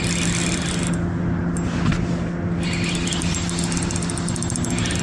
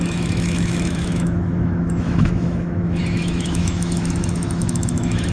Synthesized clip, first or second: second